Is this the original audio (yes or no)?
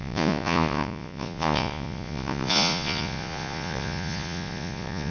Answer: no